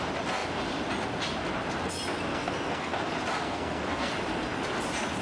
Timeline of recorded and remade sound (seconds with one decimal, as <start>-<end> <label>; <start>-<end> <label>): 0.0-2.3 recorded; 2.3-3.0 remade; 3.0-3.4 recorded; 3.4-4.1 remade; 4.1-5.2 recorded